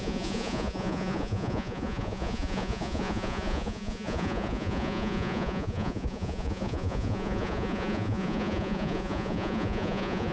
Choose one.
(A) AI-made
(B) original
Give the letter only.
A